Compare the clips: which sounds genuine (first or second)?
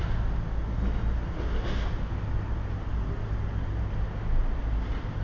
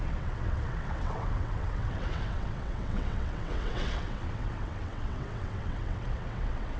first